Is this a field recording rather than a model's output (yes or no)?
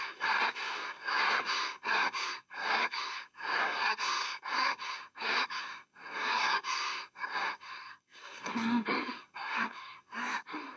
no